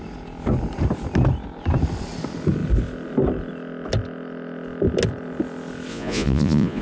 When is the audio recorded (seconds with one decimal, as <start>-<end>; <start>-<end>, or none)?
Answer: 0.0-5.9